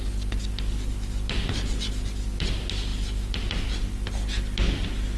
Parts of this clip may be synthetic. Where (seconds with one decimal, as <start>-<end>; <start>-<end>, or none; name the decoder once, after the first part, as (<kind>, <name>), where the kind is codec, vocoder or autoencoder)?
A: none